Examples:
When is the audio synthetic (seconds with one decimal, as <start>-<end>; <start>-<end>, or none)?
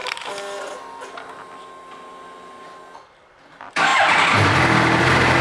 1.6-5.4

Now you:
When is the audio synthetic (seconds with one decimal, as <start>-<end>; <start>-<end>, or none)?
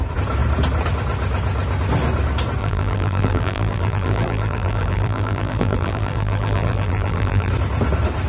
2.6-7.5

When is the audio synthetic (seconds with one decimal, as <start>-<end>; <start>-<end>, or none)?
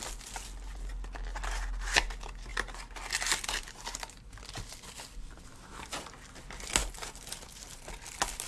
6.8-7.9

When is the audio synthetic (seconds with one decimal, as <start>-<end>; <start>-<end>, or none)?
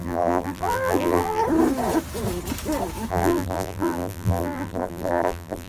0.0-1.4; 3.1-5.7